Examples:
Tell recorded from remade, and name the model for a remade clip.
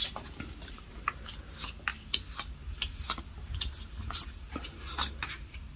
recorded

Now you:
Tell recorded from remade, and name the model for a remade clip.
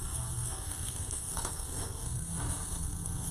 remade, codec, SNAC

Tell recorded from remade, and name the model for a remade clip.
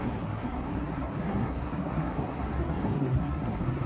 remade, codec, SNAC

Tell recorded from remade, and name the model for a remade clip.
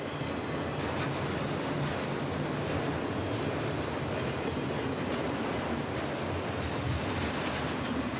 recorded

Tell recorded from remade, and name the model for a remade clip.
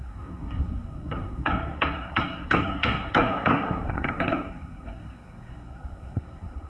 remade, codec, SNAC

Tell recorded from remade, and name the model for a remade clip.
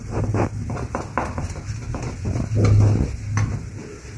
recorded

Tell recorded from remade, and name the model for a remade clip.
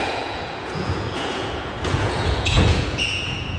remade, vocoder, Vocos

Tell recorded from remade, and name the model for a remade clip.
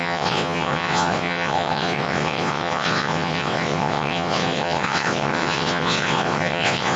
remade, vocoder, WaveNeXt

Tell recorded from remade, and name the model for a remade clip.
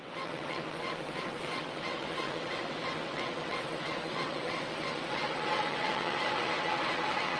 remade, vocoder, WaveNeXt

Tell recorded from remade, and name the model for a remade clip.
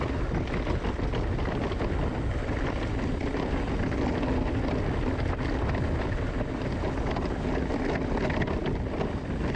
recorded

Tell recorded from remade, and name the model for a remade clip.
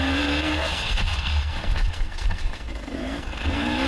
remade, codec, SNAC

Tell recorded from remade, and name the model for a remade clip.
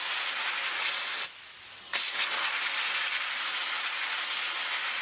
recorded